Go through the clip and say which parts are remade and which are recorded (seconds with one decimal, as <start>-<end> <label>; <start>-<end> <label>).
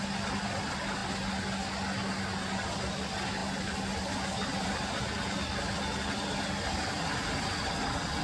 0.0-8.2 recorded